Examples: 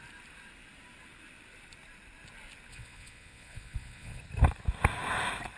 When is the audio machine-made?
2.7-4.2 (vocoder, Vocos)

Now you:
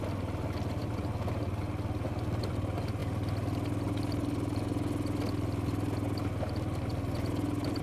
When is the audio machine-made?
none

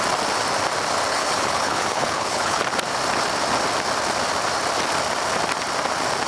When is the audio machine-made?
1.1-2.6 (codec, HILCodec)